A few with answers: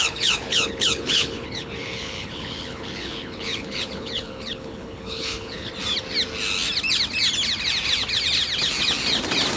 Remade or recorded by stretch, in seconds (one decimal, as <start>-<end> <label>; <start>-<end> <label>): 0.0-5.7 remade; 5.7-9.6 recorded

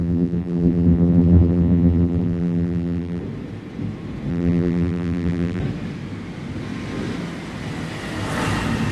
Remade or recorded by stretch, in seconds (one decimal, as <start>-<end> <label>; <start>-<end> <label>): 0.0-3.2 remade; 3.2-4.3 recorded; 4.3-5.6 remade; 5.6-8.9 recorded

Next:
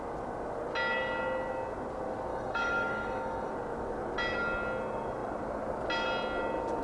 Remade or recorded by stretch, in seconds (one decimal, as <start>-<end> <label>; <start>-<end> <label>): 0.0-2.3 recorded; 2.3-3.5 remade; 3.5-6.8 recorded

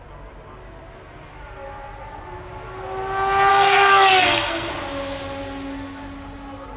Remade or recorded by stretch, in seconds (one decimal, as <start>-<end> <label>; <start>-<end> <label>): 0.0-3.5 recorded; 3.5-4.7 remade; 4.7-6.8 recorded

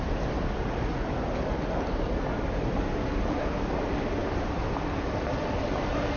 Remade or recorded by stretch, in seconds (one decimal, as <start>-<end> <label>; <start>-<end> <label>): 0.0-6.2 recorded

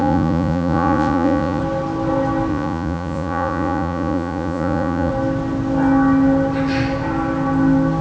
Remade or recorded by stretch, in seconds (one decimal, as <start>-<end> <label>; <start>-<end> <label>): 0.0-1.6 remade; 1.6-2.5 recorded; 2.5-5.1 remade; 5.1-8.0 recorded